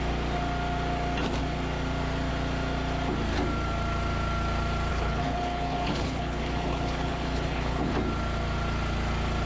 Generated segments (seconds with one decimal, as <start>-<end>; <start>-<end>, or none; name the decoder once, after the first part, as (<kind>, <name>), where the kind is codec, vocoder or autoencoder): 4.9-7.9 (codec, HILCodec)